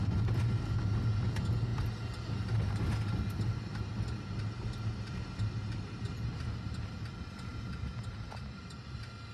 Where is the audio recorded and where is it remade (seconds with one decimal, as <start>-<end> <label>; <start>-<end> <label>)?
0.0-1.7 recorded; 1.7-2.5 remade; 2.5-6.3 recorded; 6.3-7.1 remade; 7.1-7.5 recorded; 7.5-8.6 remade; 8.6-9.3 recorded